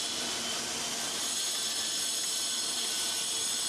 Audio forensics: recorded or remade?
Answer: recorded